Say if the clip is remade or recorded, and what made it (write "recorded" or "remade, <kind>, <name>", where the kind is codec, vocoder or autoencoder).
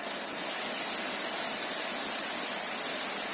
recorded